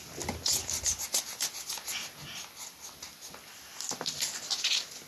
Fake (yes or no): no